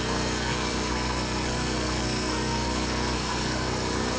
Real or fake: fake